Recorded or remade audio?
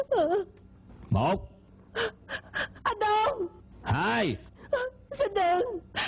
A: recorded